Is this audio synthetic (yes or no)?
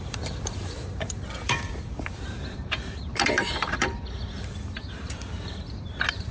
yes